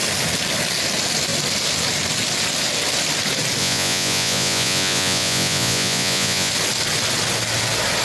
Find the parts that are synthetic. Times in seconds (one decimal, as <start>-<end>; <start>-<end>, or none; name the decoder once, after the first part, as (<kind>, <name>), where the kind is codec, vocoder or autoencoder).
3.6-6.5 (vocoder, Vocos)